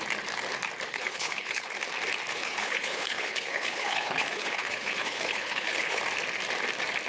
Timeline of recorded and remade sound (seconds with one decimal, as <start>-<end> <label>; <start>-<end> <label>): 0.0-0.9 recorded; 0.9-1.7 remade; 1.7-2.3 recorded; 2.3-6.0 remade; 6.0-7.1 recorded